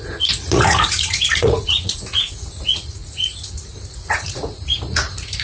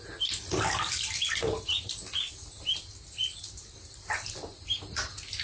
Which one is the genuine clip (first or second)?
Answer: second